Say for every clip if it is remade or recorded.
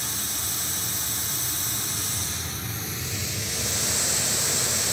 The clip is recorded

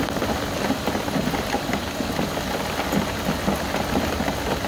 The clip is recorded